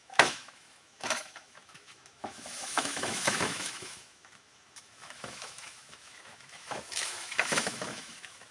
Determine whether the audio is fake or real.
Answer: fake